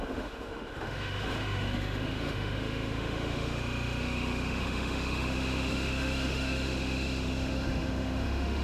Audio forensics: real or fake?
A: fake